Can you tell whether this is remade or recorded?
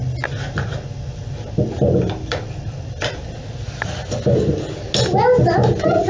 recorded